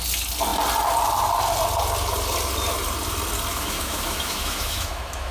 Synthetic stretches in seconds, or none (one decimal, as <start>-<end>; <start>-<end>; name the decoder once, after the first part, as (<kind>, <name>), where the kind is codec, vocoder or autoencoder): 3.5-5.3 (autoencoder, DAC-VAE)